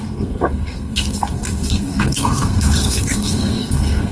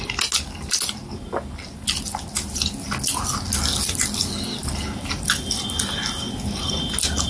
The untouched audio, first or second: second